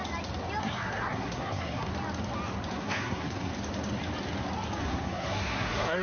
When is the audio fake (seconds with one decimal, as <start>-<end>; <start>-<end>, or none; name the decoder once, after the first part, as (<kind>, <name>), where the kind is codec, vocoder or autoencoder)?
0.6-1.9 (codec, SNAC); 2.7-3.5; 4.8-6.0